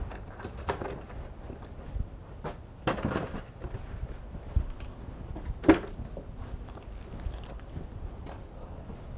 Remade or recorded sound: recorded